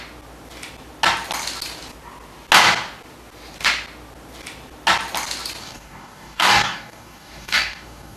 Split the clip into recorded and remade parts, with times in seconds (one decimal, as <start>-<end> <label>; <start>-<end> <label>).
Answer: 0.0-5.6 recorded; 5.6-8.2 remade

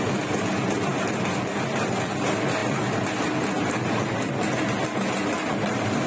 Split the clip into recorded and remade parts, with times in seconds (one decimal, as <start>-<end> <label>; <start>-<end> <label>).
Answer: 0.0-6.1 recorded